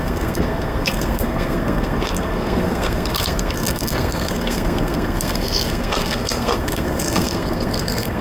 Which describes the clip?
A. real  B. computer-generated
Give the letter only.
B